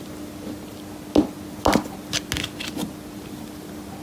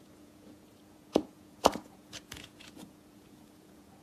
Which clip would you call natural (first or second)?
first